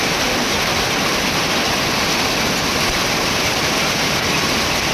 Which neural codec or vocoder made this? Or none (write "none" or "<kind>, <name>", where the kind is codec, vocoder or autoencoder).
none